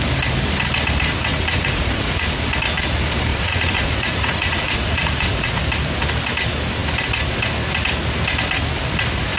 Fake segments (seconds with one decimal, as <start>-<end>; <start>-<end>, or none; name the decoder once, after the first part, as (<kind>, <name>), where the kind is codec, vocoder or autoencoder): 1.3-2.4 (vocoder, Vocos); 3.3-5.5